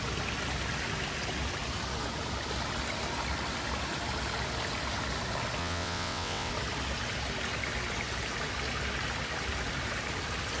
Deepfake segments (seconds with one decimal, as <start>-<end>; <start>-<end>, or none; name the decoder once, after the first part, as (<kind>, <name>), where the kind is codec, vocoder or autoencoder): 5.6-6.5 (vocoder, WaveNeXt)